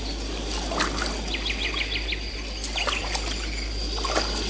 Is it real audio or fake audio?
real